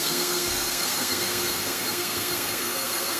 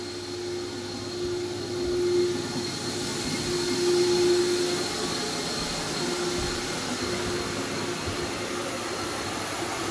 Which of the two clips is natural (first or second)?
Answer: second